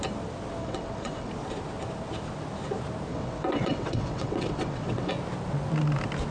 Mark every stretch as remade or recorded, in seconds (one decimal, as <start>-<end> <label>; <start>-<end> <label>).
0.0-0.6 recorded; 0.6-1.3 remade; 1.3-3.1 recorded; 3.1-5.1 remade; 5.1-6.3 recorded